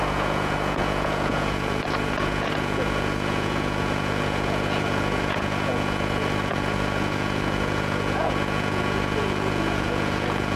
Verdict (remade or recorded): remade